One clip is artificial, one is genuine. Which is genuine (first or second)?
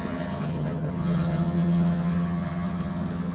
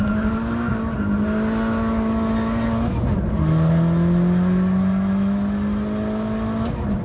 second